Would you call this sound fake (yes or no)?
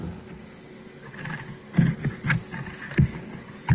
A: no